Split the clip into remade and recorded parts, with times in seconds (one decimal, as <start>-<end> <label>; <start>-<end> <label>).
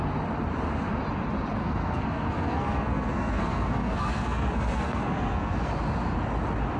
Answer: 0.0-1.6 recorded; 1.6-5.7 remade; 5.7-6.8 recorded